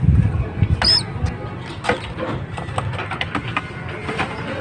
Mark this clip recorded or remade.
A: recorded